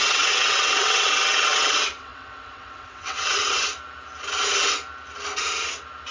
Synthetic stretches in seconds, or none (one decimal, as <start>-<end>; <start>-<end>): 0.0-3.7